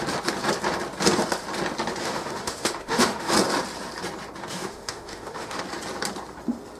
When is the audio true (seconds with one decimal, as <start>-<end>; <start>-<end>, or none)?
0.0-2.0; 3.3-4.4; 5.6-6.8